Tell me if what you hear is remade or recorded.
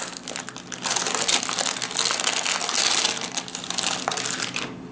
recorded